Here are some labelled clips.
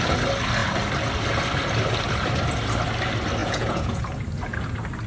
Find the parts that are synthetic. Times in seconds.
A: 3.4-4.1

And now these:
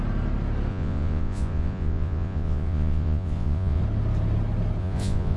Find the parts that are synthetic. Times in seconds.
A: 0.7-3.8; 4.8-5.4